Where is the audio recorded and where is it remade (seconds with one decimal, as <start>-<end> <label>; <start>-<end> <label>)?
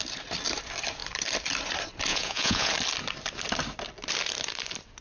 0.0-2.1 recorded; 2.1-2.7 remade; 2.7-5.0 recorded